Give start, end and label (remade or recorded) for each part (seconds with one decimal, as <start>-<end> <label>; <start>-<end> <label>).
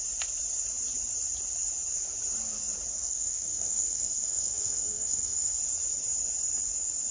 0.0-2.9 recorded; 2.9-5.6 remade; 5.6-7.1 recorded